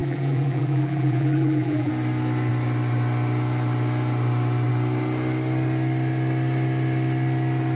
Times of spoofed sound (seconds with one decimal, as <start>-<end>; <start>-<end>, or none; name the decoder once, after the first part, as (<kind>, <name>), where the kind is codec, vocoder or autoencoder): 0.0-1.9 (vocoder, BigVGAN v2)